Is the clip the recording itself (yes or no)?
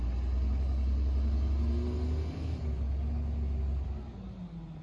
yes